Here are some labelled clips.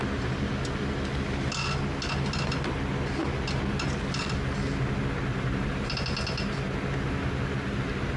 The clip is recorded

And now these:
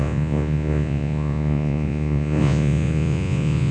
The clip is remade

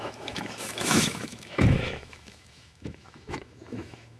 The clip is remade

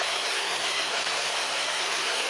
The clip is remade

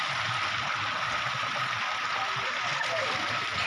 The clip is recorded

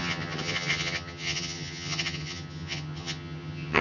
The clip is remade